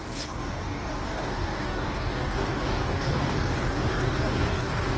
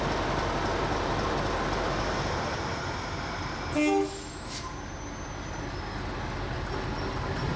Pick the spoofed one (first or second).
first